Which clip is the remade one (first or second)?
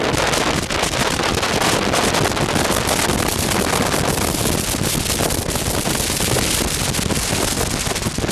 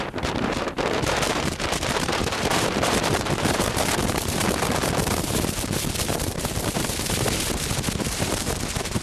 second